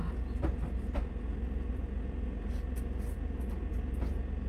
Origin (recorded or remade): recorded